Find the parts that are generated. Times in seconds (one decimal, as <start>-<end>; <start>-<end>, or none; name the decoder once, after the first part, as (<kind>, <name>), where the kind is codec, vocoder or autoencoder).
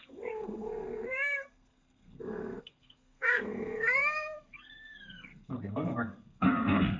0.0-7.0 (codec, SNAC)